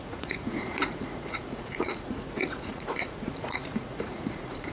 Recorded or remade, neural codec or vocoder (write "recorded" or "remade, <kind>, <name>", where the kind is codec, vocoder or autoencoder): remade, vocoder, Vocos